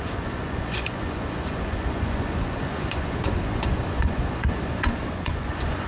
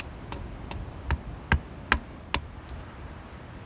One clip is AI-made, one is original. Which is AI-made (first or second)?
first